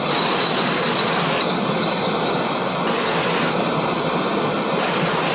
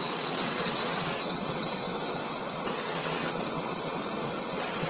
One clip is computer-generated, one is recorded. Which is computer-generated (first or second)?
second